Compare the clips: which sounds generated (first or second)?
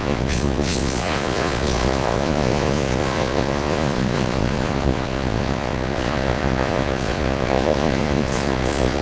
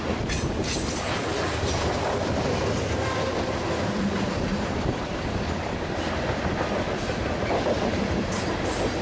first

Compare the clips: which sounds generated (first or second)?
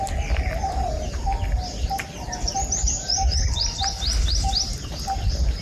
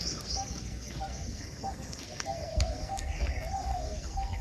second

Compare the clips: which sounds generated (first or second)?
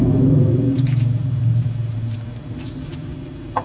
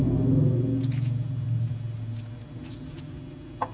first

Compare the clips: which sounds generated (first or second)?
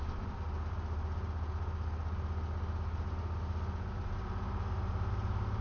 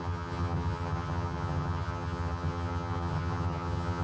second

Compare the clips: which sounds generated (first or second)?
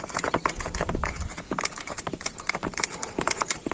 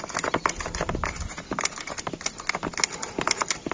first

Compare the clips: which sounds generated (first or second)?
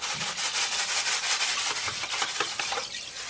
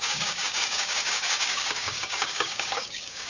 second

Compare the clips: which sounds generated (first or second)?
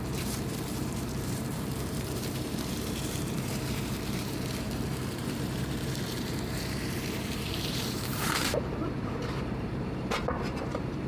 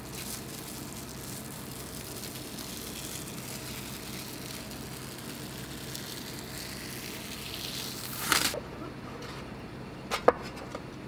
first